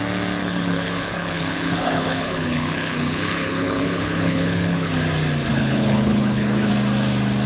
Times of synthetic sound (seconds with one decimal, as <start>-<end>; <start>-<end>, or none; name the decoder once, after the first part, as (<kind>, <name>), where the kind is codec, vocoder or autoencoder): 0.4-4.9 (codec, HILCodec); 5.5-6.7